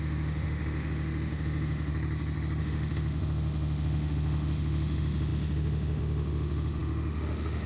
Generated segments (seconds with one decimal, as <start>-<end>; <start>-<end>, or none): 0.0-1.9; 2.6-7.7